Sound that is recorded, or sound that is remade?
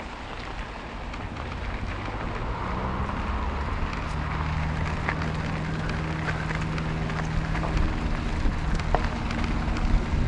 recorded